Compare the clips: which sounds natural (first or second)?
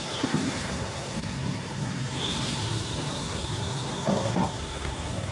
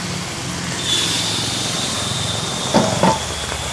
second